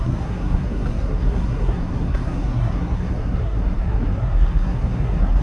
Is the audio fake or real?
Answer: fake